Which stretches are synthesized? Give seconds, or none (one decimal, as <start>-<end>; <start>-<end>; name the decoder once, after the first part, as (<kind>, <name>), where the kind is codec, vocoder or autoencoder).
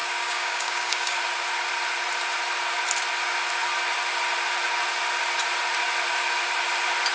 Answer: 0.0-1.2 (codec, DAC)